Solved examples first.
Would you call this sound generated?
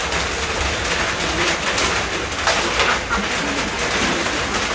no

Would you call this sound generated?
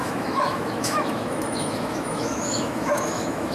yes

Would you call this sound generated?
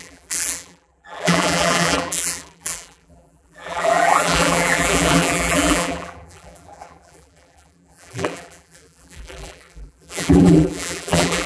yes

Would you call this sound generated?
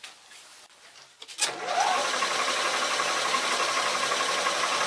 no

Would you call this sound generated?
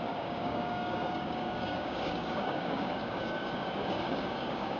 yes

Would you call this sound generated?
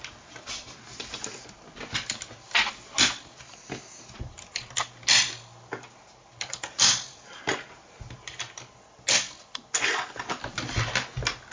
no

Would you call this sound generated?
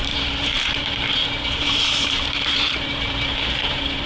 yes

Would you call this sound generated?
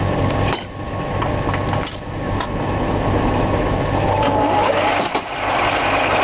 no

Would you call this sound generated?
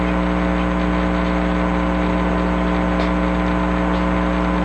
no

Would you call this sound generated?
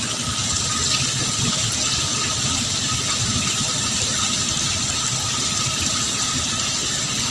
no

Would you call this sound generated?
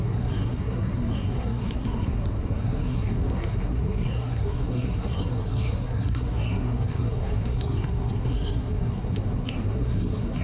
yes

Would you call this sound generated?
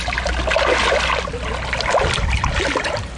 no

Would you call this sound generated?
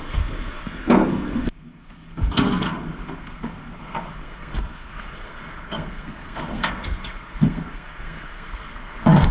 yes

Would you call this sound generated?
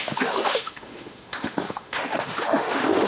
yes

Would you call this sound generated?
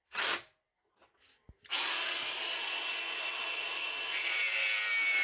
no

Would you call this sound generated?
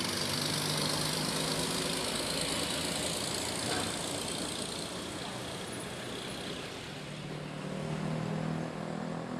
no